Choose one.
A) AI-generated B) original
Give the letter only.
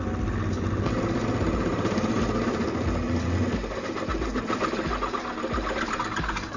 B